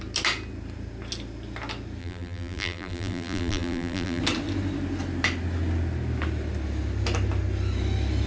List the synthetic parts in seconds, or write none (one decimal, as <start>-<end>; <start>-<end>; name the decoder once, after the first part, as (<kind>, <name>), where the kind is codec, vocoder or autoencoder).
2.0-4.2 (vocoder, BigVGAN v2)